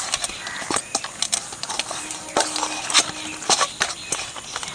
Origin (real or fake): real